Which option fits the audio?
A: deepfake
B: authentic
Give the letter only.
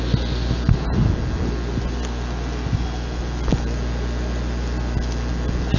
B